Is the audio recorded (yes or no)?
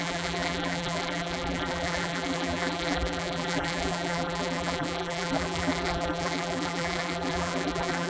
no